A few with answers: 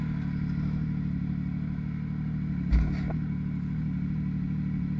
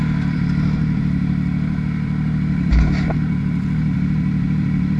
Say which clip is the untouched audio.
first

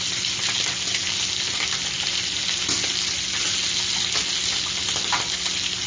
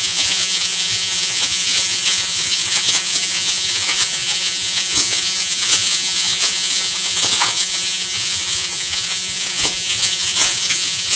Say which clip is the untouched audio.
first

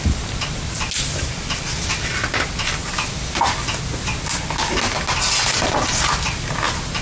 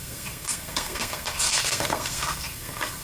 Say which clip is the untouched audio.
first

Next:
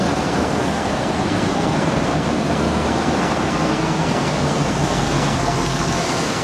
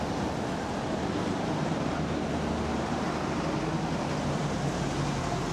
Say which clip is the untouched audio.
second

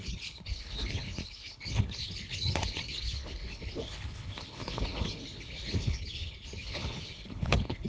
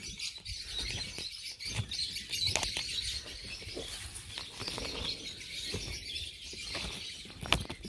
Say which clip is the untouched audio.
second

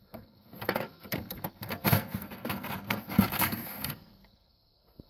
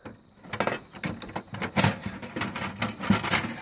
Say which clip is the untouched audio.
second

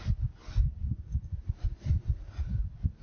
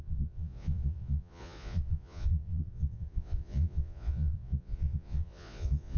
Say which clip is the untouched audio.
first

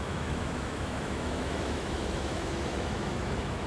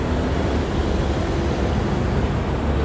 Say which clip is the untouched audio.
second